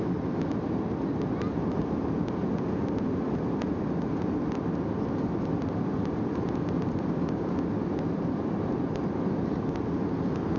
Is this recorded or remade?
recorded